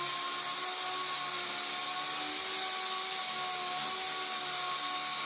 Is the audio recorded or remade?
recorded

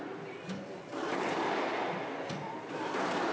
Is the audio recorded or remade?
recorded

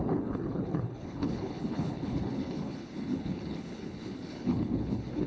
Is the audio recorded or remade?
remade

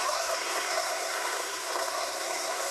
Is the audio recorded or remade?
remade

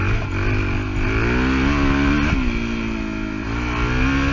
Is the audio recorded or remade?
recorded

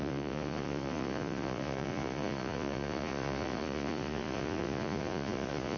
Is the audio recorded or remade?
remade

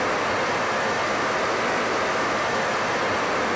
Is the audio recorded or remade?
recorded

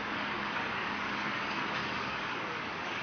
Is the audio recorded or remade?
remade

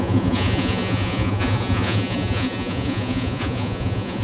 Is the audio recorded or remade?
remade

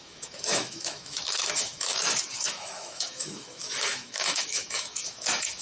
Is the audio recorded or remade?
remade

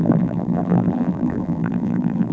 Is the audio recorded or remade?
remade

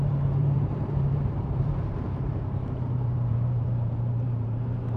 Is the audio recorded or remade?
remade